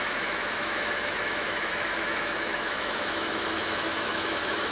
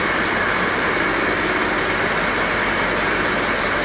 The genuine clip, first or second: second